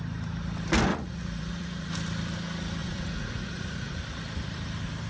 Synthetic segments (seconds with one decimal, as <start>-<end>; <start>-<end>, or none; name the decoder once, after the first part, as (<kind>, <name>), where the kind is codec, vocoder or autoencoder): 0.9-1.9 (vocoder, Vocos); 2.8-4.0